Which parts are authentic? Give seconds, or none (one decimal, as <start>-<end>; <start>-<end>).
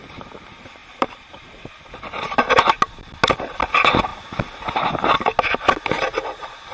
0.0-0.8; 1.3-6.7